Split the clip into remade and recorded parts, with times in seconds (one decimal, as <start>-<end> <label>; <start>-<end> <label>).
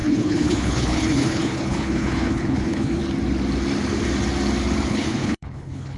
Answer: 0.0-3.0 remade; 3.0-4.9 recorded; 4.9-6.0 remade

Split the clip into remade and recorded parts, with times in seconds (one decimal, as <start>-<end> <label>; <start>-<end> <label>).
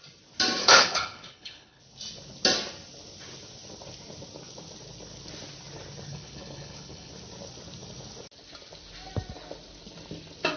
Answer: 0.0-0.6 recorded; 0.6-1.8 remade; 1.8-6.1 recorded; 6.1-7.1 remade; 7.1-10.6 recorded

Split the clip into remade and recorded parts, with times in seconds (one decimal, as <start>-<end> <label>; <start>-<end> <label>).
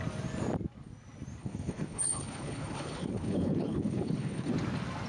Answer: 0.0-1.4 recorded; 1.4-4.5 remade; 4.5-5.1 recorded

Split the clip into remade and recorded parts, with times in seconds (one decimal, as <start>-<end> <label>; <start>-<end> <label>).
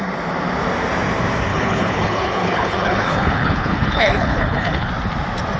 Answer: 0.0-1.5 recorded; 1.5-4.9 remade; 4.9-5.6 recorded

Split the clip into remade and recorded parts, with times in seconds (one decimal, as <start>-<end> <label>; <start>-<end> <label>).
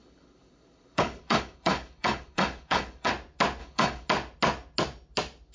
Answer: 0.0-3.1 remade; 3.1-3.6 recorded; 3.6-4.1 remade; 4.1-5.5 recorded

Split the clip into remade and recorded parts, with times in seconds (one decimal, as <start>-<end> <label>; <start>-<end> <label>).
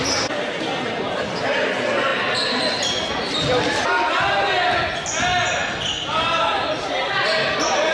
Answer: 0.0-7.9 recorded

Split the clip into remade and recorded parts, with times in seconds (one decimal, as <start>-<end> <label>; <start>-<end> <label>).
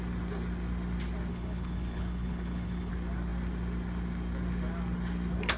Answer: 0.0-1.3 recorded; 1.3-2.9 remade; 2.9-5.6 recorded